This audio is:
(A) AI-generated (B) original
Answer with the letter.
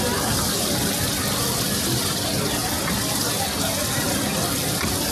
B